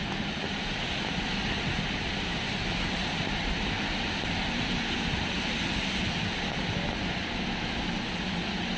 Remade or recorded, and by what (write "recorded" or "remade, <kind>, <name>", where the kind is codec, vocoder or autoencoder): recorded